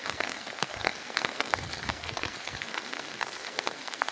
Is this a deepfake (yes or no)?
yes